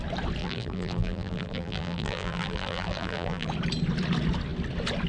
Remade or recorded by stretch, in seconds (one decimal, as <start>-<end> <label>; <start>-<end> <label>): 0.0-0.4 recorded; 0.4-3.5 remade; 3.5-5.1 recorded